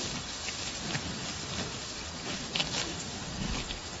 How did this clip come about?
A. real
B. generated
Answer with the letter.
A